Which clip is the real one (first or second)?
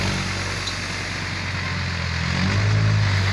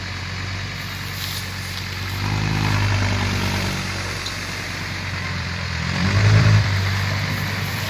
first